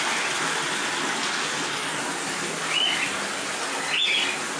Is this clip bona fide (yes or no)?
yes